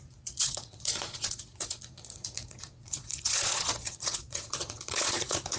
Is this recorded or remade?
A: remade